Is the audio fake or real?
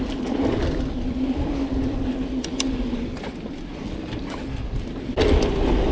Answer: real